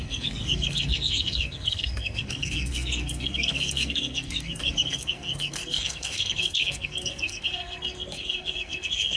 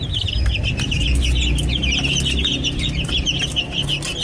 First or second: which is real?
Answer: second